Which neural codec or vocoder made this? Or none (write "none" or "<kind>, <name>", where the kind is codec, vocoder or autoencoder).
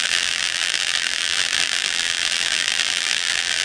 vocoder, BigVGAN v2